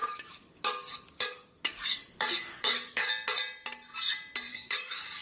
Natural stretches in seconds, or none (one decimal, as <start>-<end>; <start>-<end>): 3.1-4.5